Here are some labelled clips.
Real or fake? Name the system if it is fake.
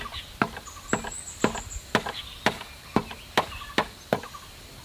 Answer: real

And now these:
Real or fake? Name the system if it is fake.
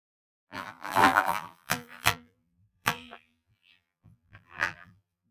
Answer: fake, vocoder, BigVGAN v2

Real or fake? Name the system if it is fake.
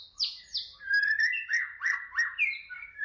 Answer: fake, vocoder, BigVGAN v2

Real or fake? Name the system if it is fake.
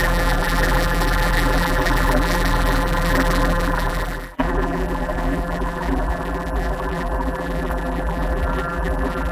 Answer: fake, vocoder, BigVGAN v2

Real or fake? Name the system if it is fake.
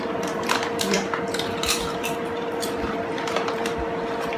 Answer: fake, vocoder, BigVGAN v2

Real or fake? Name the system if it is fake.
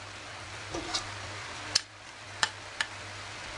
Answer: fake, vocoder, BigVGAN v2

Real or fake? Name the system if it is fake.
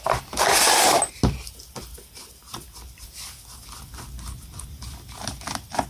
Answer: real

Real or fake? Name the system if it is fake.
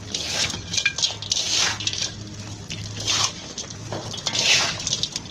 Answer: real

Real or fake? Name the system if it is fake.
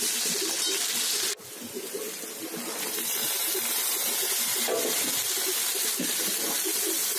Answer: real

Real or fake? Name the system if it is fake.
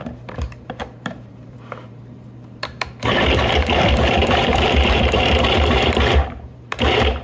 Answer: fake, vocoder, BigVGAN v2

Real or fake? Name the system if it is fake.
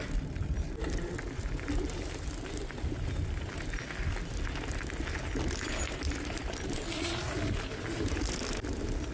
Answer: real